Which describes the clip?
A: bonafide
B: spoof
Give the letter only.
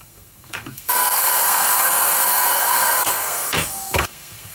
B